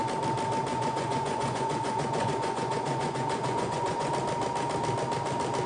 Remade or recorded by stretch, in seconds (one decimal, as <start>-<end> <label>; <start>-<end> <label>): 0.0-0.7 recorded; 0.7-4.1 remade; 4.1-5.7 recorded